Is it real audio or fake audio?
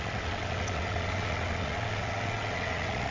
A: fake